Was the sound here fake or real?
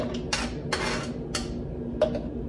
real